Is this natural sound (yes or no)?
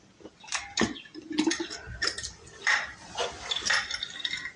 no